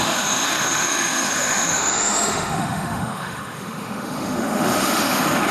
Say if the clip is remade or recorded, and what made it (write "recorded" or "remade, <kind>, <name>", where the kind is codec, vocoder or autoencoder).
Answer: remade, autoencoder, DAC-VAE